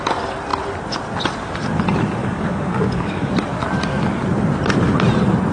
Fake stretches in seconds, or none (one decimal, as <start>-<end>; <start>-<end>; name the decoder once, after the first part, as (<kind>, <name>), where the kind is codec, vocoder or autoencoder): 2.2-3.3 (codec, DAC)